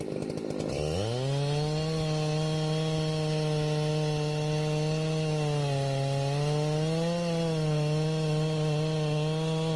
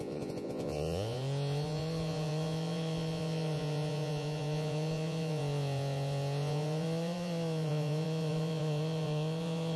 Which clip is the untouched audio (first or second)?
first